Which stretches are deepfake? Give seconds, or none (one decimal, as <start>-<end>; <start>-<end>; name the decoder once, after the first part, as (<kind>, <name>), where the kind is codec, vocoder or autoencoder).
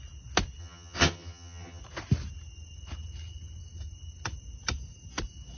0.6-1.8 (vocoder, HiFi-GAN)